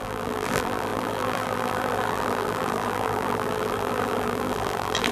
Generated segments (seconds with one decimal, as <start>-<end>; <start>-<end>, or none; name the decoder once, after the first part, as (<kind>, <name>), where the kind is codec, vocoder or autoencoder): 0.0-5.1 (vocoder, BigVGAN v2)